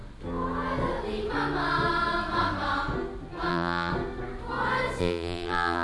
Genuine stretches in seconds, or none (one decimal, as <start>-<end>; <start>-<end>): 0.0-3.5; 3.9-5.0